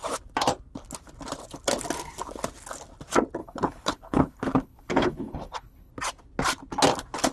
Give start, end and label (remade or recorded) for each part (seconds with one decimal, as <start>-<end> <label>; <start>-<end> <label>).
0.0-3.4 recorded; 3.4-5.9 remade; 5.9-7.3 recorded